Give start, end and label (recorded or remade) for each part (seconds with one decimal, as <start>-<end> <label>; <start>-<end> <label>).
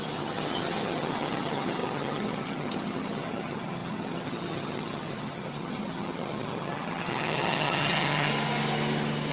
0.0-8.3 remade; 8.3-9.3 recorded